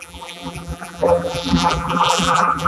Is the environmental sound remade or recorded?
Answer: remade